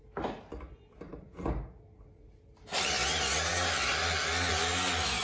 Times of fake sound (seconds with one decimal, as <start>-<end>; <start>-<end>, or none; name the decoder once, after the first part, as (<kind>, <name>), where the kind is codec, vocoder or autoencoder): none